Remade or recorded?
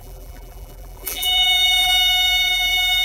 remade